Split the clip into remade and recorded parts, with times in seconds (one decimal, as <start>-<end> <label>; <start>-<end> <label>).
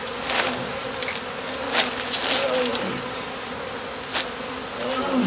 0.0-5.3 recorded